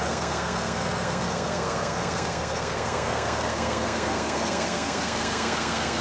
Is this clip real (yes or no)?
no